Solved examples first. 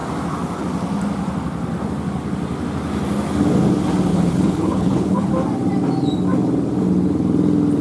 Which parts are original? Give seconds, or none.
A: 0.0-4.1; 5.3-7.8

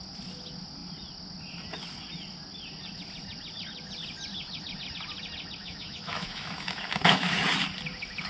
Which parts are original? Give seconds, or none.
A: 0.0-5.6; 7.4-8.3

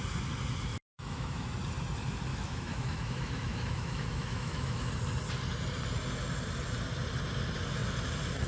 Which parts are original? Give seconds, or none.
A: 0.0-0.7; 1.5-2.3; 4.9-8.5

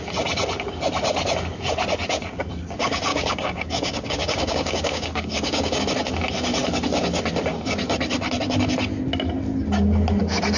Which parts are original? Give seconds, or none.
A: 0.0-3.1; 5.8-10.6